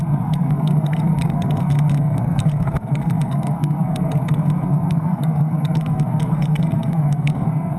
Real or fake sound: fake